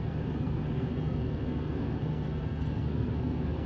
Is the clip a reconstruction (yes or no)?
yes